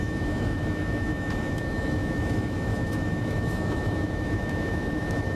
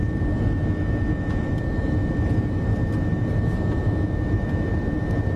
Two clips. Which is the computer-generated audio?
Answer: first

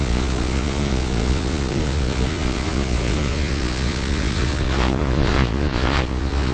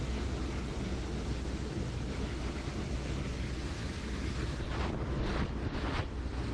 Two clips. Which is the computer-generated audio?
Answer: first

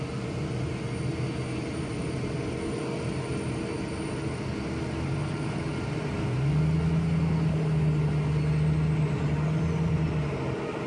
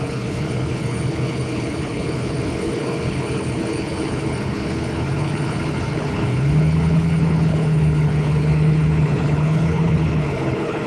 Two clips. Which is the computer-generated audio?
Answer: second